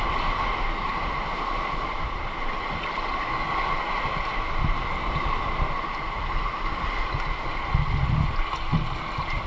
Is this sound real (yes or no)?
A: yes